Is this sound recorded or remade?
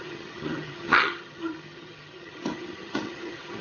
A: remade